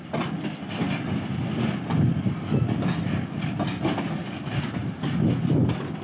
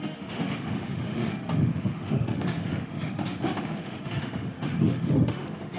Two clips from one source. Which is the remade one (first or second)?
second